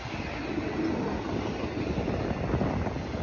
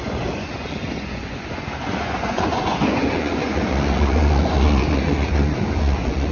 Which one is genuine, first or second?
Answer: first